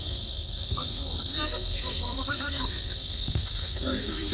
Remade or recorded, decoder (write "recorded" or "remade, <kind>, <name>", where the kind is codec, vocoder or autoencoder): remade, codec, SNAC